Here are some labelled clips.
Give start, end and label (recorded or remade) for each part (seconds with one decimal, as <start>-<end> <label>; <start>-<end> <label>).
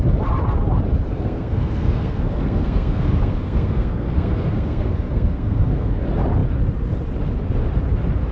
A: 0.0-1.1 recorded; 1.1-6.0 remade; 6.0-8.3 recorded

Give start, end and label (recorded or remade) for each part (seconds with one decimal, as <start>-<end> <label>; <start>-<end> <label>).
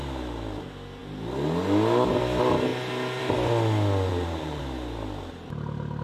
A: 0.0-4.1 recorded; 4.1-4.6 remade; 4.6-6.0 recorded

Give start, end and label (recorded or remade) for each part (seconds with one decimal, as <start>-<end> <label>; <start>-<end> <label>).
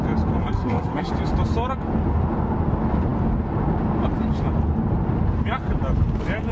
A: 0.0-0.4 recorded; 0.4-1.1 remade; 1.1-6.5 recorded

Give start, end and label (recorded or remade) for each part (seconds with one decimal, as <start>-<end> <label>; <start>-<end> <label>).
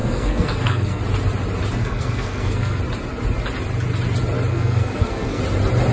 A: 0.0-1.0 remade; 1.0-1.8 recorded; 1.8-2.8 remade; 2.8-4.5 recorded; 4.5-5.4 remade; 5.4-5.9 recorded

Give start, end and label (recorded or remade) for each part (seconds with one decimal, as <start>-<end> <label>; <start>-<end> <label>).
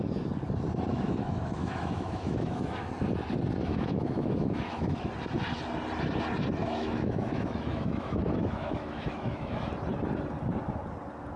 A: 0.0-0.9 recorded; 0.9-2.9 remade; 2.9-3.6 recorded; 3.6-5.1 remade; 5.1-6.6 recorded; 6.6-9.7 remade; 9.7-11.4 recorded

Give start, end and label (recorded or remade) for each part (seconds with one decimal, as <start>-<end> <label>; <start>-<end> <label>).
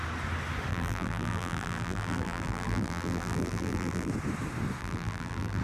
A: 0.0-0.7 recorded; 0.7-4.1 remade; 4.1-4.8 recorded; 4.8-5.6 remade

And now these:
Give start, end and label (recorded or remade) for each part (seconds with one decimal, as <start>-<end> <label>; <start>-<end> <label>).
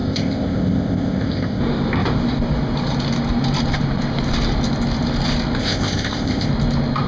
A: 0.0-1.6 remade; 1.6-5.6 recorded; 5.6-6.5 remade; 6.5-7.1 recorded